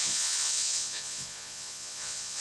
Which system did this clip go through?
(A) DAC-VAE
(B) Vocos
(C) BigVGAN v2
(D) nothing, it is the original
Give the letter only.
B